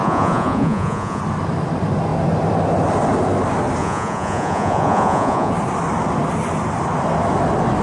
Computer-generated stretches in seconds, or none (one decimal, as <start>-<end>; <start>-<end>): 0.0-1.2; 3.8-5.5